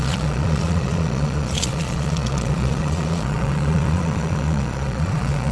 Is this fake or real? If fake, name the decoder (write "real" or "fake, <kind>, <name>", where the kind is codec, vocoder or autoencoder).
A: fake, vocoder, Vocos